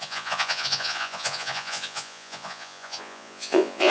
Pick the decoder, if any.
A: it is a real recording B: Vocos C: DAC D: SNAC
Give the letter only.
B